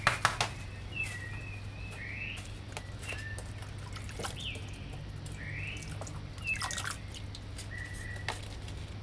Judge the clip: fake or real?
real